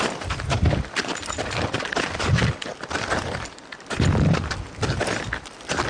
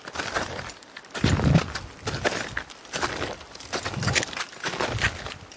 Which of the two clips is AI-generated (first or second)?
first